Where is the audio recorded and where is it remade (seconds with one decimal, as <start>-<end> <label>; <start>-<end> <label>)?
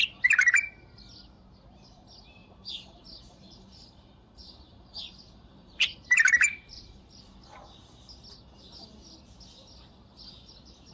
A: 0.0-2.4 recorded; 2.4-7.2 remade; 7.2-10.9 recorded